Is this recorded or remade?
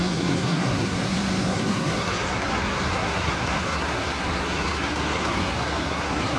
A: remade